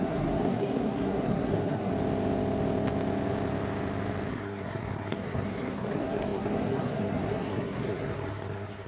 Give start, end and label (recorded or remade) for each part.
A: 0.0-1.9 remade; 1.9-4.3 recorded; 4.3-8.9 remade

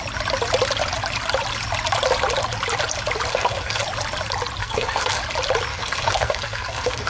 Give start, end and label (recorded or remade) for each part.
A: 0.0-3.3 recorded; 3.3-3.8 remade; 3.8-4.6 recorded; 4.6-5.2 remade; 5.2-5.7 recorded; 5.7-7.1 remade